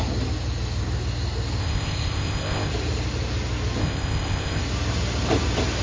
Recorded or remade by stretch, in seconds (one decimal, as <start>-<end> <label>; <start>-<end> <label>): 0.0-1.6 recorded; 1.6-2.7 remade; 2.7-3.8 recorded; 3.8-4.6 remade; 4.6-5.8 recorded